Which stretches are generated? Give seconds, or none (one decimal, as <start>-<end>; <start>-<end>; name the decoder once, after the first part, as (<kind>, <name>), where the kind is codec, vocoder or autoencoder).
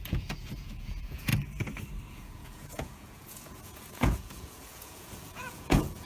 0.0-1.3 (vocoder, Vocos); 2.1-6.1